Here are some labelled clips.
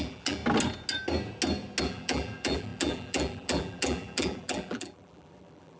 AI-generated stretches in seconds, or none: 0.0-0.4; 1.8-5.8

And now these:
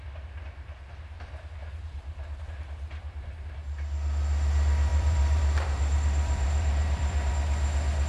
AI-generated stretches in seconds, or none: 4.9-7.3

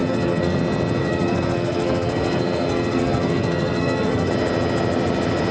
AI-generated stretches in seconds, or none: 0.0-0.6; 1.0-4.3

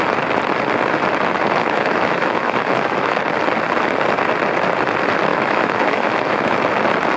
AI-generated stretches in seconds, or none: 1.6-3.2; 5.3-6.6

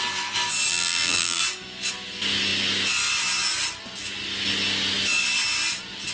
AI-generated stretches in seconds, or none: 0.7-1.4